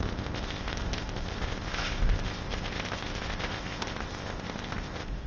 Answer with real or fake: fake